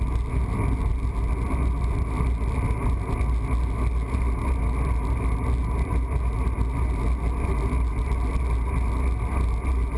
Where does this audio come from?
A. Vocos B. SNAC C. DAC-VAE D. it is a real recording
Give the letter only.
D